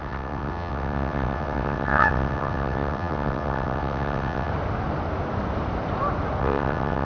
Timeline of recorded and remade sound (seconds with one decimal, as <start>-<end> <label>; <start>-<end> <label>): 0.0-4.5 remade; 4.5-6.4 recorded; 6.4-7.0 remade